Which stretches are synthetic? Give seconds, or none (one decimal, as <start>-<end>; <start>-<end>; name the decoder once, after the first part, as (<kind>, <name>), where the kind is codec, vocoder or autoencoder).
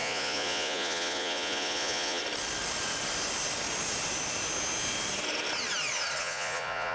0.0-2.2 (vocoder, Vocos); 6.2-6.9